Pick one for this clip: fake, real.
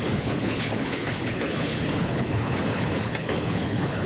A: fake